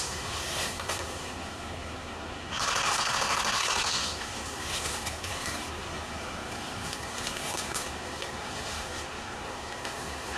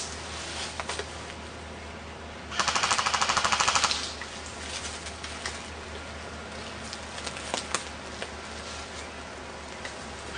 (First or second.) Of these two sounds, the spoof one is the first